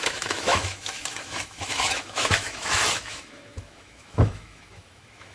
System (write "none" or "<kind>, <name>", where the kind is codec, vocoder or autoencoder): autoencoder, DAC-VAE